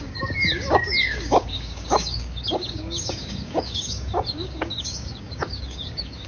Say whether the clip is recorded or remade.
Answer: remade